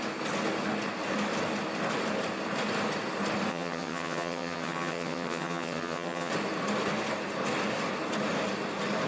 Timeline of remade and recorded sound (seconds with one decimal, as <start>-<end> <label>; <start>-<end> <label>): 0.0-3.5 recorded; 3.5-6.3 remade; 6.3-9.1 recorded